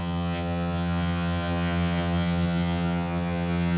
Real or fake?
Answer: fake